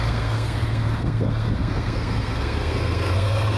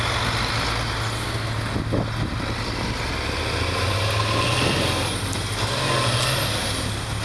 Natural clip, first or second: second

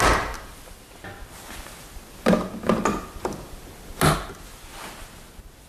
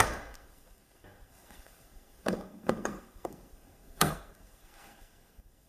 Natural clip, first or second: first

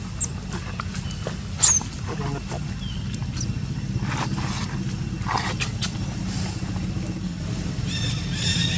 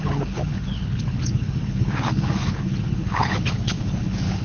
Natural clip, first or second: first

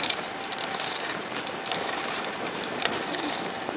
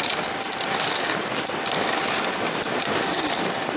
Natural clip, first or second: second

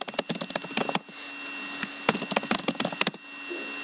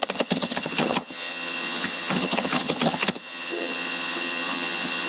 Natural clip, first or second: first